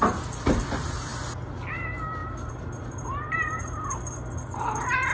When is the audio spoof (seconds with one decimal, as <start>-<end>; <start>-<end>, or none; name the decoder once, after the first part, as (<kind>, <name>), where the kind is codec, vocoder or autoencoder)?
2.2-3.8 (vocoder, BigVGAN v2)